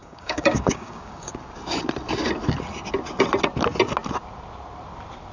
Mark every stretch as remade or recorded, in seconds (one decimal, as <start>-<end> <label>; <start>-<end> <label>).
0.0-1.3 remade; 1.3-5.3 recorded